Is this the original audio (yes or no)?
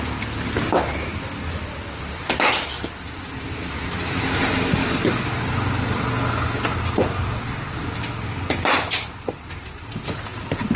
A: yes